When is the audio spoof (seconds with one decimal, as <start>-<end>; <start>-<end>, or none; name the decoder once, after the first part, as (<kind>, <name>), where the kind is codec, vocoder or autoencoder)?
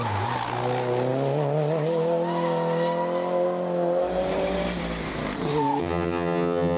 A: 5.8-6.8 (vocoder, HiFi-GAN)